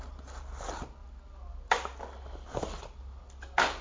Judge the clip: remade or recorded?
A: recorded